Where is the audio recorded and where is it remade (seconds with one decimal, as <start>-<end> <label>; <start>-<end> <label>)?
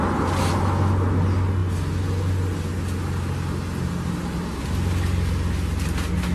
0.0-6.3 recorded